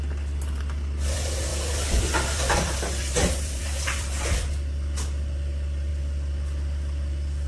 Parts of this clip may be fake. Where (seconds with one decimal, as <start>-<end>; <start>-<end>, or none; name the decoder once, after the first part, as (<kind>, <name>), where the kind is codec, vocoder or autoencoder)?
5.9-7.5 (vocoder, BigVGAN v2)